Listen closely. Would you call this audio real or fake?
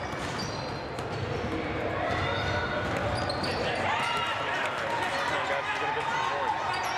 real